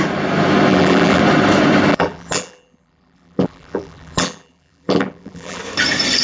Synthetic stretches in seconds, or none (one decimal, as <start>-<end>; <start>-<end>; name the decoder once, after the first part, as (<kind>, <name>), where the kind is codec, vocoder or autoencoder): 0.7-1.2 (vocoder, BigVGAN v2); 1.9-5.6